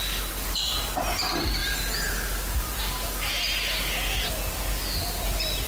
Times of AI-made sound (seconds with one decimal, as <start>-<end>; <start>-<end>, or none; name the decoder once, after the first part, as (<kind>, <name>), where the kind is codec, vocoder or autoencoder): none